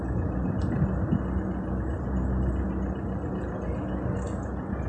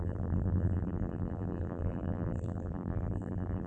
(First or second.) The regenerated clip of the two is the second